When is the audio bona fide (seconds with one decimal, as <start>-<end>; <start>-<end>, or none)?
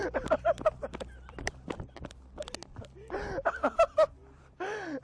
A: 2.1-4.2